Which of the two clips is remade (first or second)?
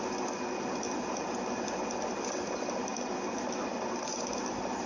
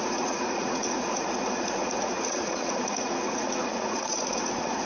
second